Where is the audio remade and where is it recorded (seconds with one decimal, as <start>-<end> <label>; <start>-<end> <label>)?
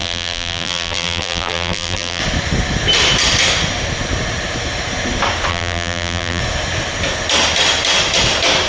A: 0.0-2.2 remade; 2.2-5.5 recorded; 5.5-6.4 remade; 6.4-8.7 recorded